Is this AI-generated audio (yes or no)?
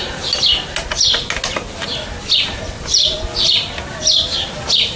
no